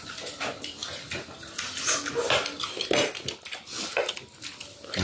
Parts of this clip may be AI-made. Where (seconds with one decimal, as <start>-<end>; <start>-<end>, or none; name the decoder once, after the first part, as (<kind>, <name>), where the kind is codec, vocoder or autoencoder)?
none